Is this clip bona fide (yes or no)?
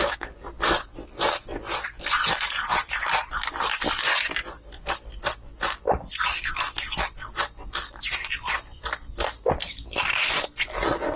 yes